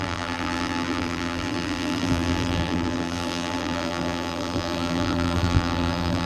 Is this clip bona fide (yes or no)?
no